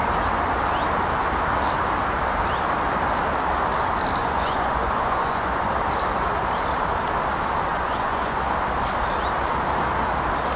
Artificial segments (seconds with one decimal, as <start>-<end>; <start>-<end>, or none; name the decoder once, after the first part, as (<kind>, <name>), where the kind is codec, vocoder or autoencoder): 4.2-5.7 (vocoder, Vocos); 7.7-8.4